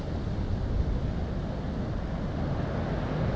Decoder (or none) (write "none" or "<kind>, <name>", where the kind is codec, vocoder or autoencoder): none